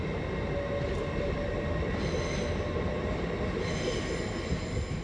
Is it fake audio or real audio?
real